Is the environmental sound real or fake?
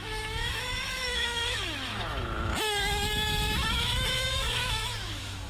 fake